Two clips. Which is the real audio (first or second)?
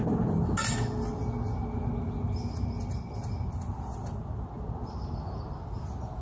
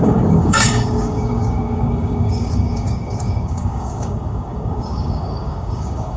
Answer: first